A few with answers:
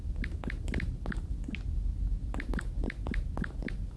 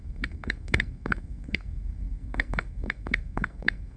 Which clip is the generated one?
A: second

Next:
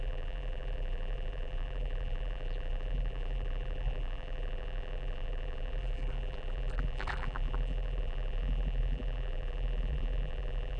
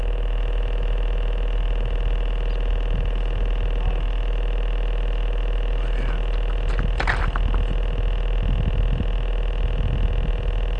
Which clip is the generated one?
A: first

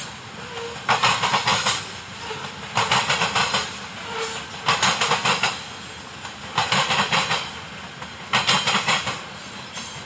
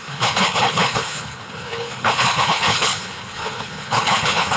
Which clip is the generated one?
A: second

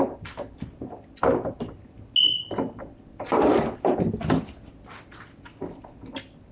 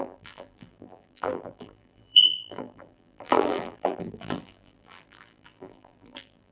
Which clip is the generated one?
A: second